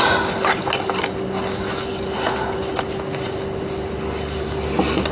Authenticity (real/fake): real